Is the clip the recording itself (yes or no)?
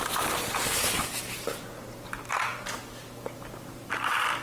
yes